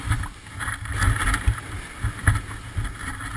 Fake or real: real